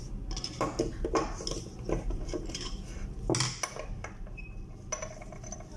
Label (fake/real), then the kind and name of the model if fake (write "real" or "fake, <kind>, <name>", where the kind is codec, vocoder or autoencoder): real